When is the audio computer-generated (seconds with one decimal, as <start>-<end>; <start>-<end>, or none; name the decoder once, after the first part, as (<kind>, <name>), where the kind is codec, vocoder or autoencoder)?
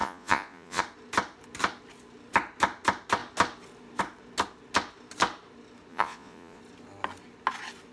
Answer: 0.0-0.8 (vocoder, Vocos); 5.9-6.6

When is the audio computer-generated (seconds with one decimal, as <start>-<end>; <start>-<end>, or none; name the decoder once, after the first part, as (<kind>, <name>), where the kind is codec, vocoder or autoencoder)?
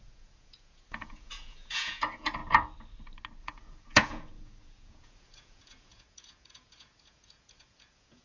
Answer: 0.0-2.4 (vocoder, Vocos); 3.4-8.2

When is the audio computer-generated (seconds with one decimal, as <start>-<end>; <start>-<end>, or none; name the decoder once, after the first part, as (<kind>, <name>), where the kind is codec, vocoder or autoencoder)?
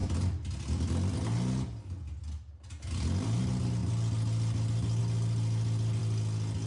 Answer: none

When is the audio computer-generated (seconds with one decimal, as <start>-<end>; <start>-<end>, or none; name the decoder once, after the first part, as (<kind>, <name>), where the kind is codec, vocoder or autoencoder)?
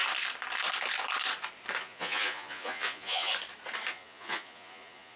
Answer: 1.8-3.3 (vocoder, Vocos); 3.9-5.2